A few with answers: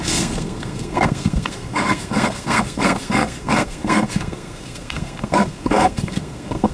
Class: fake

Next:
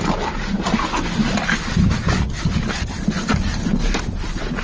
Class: real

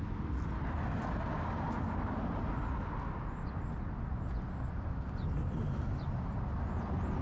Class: real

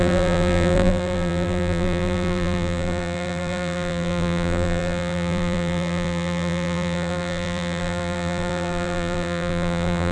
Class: fake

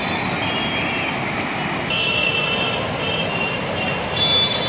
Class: real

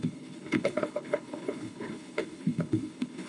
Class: fake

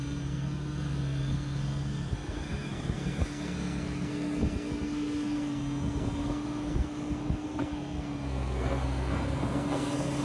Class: fake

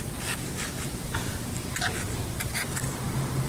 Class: real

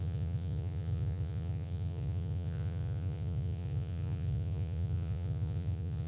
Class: fake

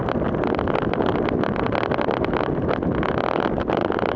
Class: real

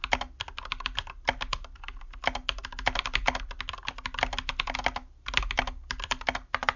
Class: real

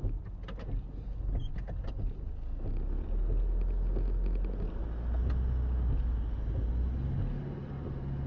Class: real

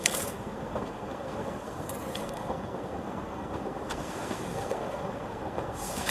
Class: fake